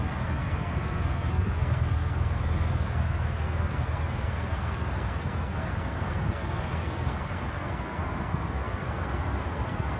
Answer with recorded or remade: remade